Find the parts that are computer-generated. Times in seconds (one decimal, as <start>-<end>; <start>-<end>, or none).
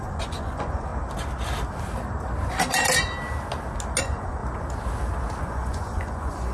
0.0-0.9; 4.0-4.4; 5.4-6.5